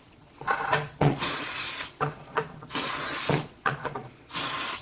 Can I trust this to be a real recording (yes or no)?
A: no